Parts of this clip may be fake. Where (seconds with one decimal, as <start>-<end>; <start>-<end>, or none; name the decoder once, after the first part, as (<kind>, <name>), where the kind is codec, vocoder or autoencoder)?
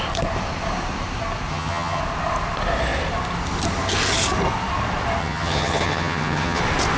1.5-2.0 (vocoder, HiFi-GAN); 5.2-6.6